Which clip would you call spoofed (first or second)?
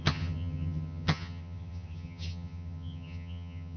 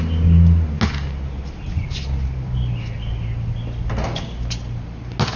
first